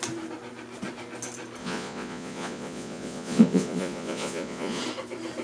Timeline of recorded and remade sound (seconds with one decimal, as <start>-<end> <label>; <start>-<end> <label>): 0.0-1.6 recorded; 1.6-4.8 remade; 4.8-5.4 recorded